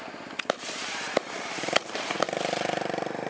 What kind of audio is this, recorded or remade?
remade